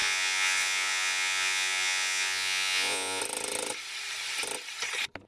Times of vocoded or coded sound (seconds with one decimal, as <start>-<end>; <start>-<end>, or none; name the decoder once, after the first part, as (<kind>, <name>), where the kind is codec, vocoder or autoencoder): 0.0-3.2 (vocoder, Vocos)